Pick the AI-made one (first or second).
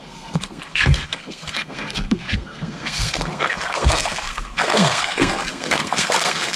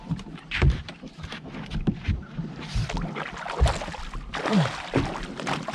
first